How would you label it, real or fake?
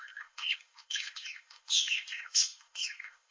fake